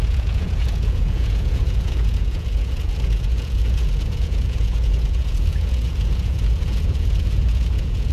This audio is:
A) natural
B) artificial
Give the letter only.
B